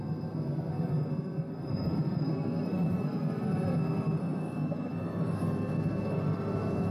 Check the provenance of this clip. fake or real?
fake